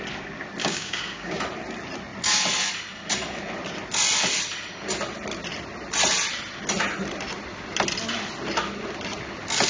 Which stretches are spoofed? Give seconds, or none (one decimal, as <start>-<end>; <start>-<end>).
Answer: 0.6-1.4